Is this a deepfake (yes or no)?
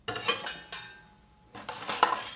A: no